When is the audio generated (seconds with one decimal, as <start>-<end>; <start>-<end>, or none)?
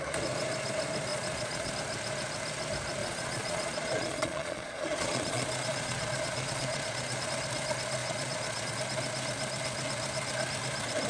1.1-1.7; 3.0-7.3; 8.0-8.7